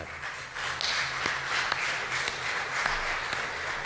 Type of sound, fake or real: real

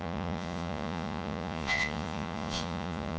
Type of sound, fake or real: fake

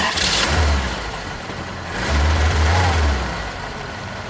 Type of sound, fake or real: fake